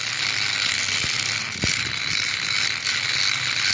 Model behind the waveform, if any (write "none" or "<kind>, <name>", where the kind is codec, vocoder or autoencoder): none